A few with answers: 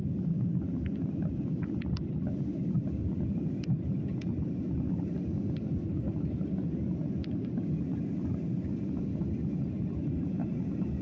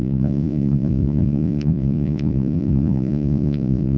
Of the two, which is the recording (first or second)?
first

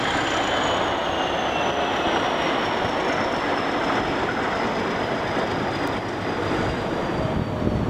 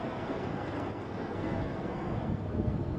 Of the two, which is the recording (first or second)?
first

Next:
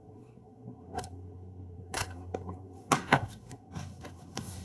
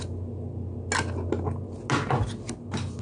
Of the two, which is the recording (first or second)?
second